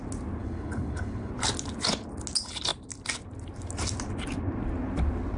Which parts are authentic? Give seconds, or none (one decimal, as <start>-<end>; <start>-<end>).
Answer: 0.0-0.4; 1.3-5.4